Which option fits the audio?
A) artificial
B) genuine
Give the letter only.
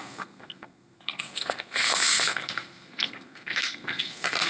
A